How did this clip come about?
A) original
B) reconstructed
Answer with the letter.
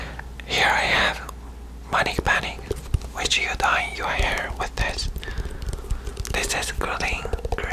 A